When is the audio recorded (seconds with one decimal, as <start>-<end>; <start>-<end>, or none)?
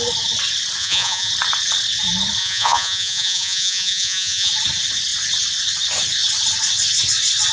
0.0-0.8; 1.3-2.4; 4.5-7.5